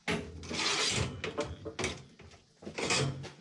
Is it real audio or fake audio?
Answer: real